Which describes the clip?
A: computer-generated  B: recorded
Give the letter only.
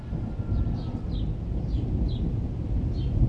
B